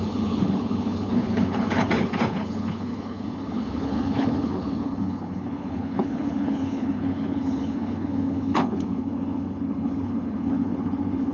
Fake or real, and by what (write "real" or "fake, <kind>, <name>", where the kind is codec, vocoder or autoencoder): fake, codec, HILCodec